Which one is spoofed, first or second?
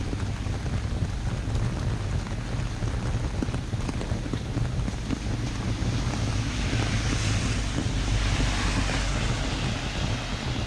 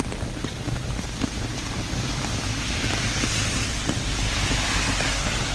second